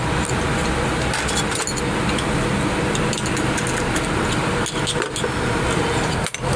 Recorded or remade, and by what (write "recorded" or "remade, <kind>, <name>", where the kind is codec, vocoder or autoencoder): recorded